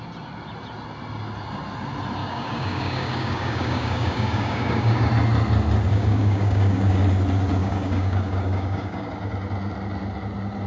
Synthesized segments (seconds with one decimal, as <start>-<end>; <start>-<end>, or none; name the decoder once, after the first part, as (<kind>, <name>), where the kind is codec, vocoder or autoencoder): 2.2-5.1 (codec, DAC); 5.9-7.0; 7.6-9.1